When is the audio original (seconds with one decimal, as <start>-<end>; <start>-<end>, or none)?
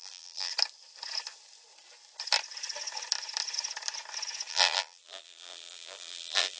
0.5-4.5